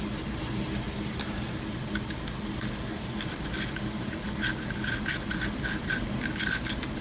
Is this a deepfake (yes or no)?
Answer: no